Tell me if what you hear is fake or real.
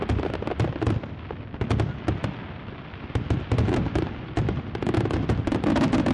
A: real